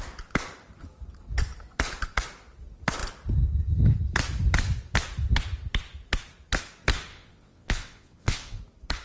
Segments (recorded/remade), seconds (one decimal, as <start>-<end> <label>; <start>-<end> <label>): 0.0-7.1 recorded; 7.1-8.6 remade; 8.6-9.0 recorded